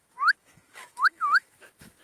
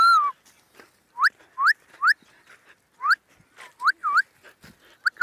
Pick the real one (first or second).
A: second